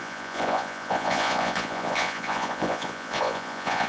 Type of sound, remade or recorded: remade